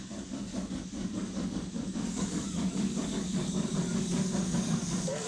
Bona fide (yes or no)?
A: no